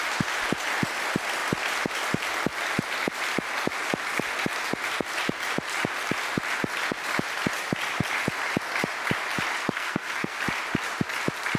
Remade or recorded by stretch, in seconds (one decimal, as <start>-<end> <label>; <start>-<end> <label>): 0.0-9.6 recorded; 9.6-10.4 remade; 10.4-11.6 recorded